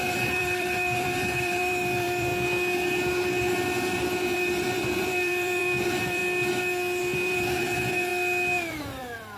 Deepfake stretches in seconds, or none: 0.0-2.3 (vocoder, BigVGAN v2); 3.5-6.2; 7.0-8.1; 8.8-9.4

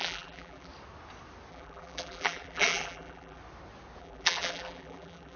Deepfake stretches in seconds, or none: 0.0-0.7 (vocoder, BigVGAN v2); 1.5-3.4; 4.0-5.4

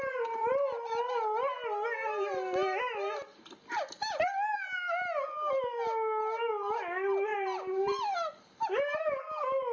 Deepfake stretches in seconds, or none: 7.3-9.0 (vocoder, BigVGAN v2)